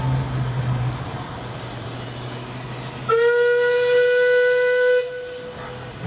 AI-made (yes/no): no